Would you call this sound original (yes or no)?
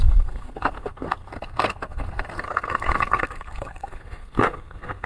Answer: no